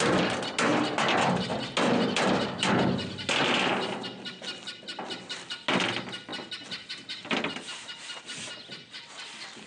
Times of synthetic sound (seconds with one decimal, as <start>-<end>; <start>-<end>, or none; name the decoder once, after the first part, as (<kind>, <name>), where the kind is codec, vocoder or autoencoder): none